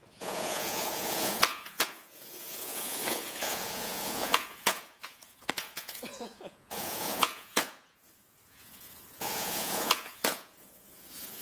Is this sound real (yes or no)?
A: no